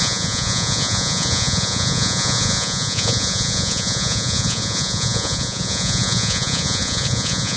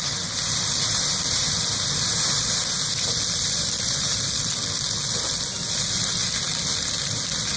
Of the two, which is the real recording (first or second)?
second